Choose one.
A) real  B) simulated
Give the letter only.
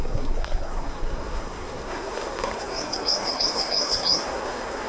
B